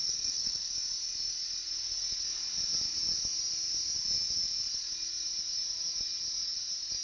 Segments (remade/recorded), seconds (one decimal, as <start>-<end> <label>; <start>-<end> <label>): 0.0-0.7 remade; 0.7-7.0 recorded